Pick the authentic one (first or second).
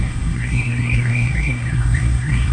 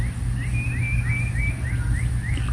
second